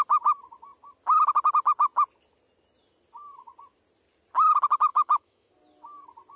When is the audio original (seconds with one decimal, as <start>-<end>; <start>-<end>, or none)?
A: 0.0-4.9; 5.5-6.4